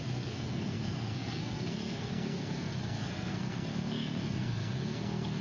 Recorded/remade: remade